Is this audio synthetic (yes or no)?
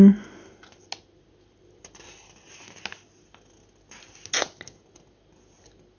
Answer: no